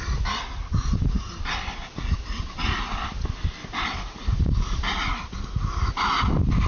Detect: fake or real real